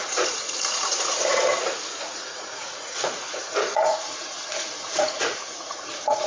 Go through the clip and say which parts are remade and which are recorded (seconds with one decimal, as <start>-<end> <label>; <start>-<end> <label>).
0.0-1.3 remade; 1.3-2.0 recorded; 2.0-6.3 remade